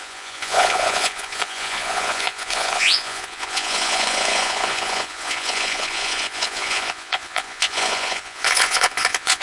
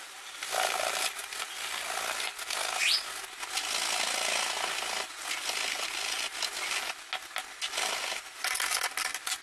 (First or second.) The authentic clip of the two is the second